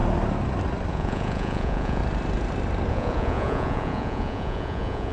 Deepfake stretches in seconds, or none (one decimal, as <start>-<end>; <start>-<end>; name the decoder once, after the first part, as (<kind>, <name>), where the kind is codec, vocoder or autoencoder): 0.9-2.0 (vocoder, Vocos); 2.9-5.1